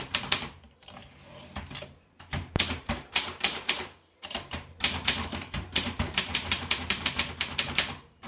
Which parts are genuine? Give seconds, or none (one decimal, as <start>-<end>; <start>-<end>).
1.0-2.0